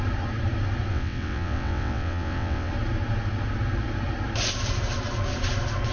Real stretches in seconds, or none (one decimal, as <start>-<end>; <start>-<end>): 0.0-0.9; 2.7-5.9